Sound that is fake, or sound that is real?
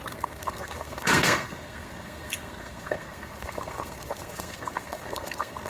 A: fake